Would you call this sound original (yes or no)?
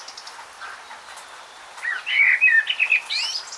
yes